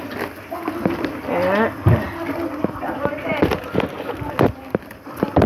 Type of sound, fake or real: real